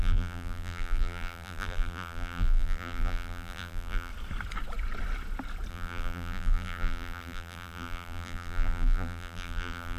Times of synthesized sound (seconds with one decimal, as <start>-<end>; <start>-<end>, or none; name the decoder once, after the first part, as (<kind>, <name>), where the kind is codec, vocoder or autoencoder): 0.0-4.1 (vocoder, BigVGAN v2); 5.7-10.0